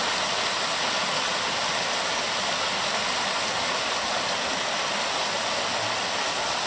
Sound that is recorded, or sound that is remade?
recorded